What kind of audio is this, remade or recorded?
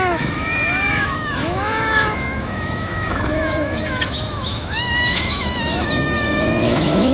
remade